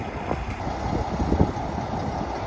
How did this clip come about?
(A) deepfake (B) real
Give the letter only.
B